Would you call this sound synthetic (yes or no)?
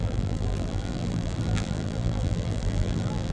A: yes